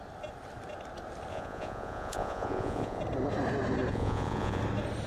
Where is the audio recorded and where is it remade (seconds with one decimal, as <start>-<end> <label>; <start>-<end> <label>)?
0.0-1.3 recorded; 1.3-3.0 remade; 3.0-3.9 recorded; 3.9-4.6 remade; 4.6-5.1 recorded